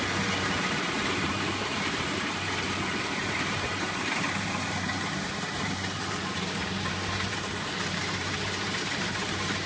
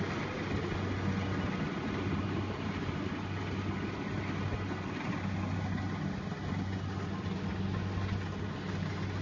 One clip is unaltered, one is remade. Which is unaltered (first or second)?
second